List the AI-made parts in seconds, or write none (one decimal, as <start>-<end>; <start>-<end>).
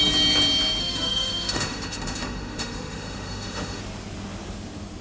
0.8-3.8